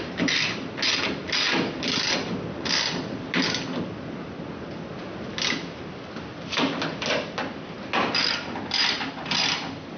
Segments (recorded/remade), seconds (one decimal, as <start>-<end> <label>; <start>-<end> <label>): 0.0-10.0 recorded